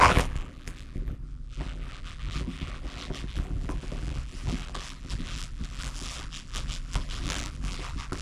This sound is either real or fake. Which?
fake